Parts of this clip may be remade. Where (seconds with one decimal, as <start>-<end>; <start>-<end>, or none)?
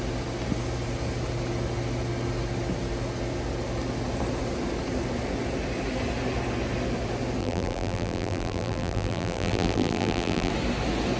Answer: 7.4-10.5